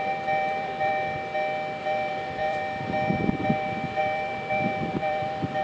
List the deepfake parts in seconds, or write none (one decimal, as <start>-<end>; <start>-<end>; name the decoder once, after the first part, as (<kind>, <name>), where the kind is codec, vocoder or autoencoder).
0.0-0.9 (vocoder, BigVGAN v2); 1.8-5.6